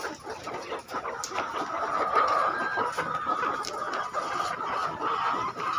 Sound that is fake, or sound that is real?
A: real